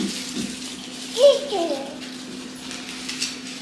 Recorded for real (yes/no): yes